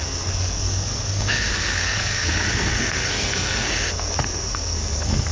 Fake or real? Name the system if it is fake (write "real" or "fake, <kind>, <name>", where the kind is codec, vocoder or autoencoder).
fake, codec, SNAC